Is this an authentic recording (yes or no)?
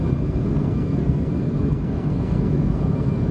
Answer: no